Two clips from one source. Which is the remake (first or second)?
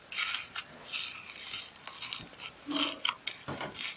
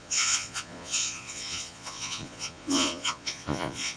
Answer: second